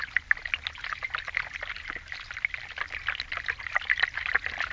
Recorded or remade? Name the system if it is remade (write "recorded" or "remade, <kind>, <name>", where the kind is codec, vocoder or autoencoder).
recorded